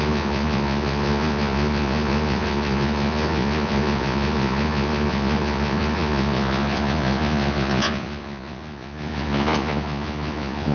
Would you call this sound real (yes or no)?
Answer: no